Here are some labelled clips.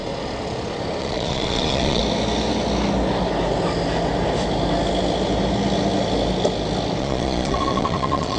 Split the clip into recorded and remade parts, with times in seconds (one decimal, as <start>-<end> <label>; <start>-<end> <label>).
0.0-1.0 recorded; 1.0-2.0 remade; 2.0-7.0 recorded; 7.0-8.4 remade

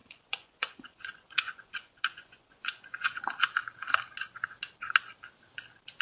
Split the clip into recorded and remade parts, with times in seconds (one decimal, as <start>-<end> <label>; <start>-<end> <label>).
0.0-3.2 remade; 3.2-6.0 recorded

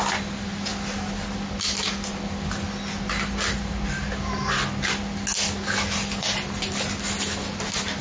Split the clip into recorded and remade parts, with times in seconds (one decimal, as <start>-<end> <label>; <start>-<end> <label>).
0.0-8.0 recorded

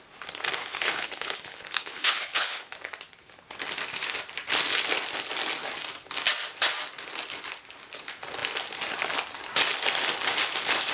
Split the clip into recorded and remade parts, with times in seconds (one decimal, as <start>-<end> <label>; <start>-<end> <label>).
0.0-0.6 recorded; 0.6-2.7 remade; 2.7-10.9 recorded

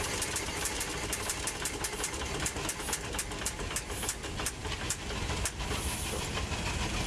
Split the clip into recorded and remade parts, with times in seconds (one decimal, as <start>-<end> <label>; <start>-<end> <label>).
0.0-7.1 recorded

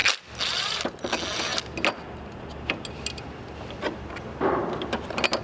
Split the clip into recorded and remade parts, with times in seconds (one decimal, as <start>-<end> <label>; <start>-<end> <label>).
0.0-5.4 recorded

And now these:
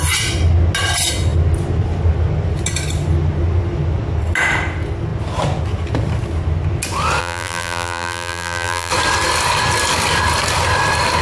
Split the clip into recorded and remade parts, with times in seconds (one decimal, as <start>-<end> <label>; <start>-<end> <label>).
0.0-7.2 recorded; 7.2-8.9 remade; 8.9-11.2 recorded